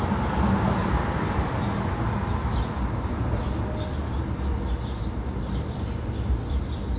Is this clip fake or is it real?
real